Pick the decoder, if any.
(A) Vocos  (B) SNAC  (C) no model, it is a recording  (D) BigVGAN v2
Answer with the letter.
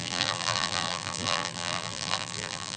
D